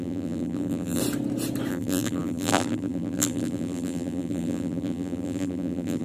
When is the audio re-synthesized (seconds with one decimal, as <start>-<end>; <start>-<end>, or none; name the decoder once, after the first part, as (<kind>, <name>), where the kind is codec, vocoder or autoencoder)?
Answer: 0.0-1.0 (vocoder, BigVGAN v2); 1.7-6.0